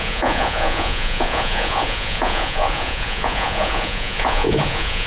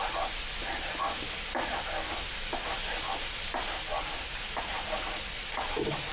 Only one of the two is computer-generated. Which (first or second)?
first